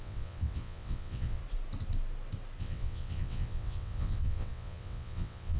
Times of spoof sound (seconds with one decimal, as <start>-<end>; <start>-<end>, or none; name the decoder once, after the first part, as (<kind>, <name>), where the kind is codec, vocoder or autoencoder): 0.0-1.4 (vocoder, WaveNeXt); 2.6-5.6